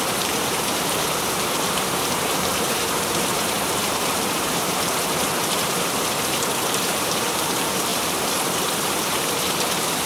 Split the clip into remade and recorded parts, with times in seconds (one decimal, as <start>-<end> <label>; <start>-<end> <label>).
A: 0.0-10.1 remade